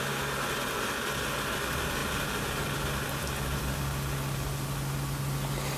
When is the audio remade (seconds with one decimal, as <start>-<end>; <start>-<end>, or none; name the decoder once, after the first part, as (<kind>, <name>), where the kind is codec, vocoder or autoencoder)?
none